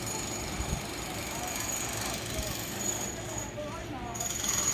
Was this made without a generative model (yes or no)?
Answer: no